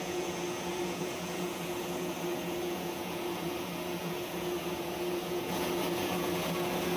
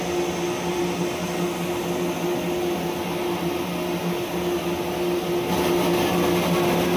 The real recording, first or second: second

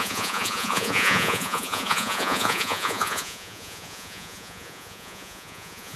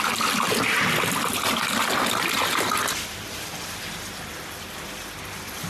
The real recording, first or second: second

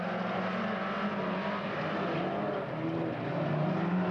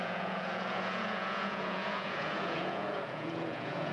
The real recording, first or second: first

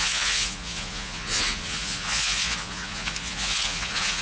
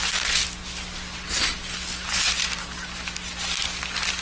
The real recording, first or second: second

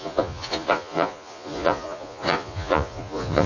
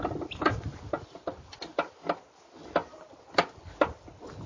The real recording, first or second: second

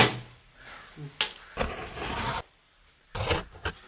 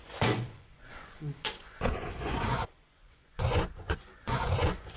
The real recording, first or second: first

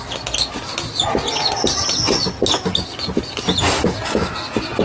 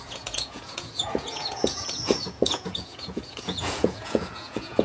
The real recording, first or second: first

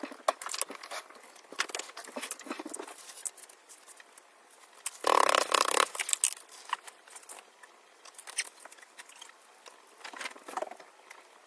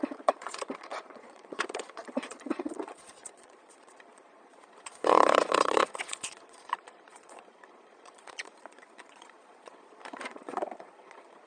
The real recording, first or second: first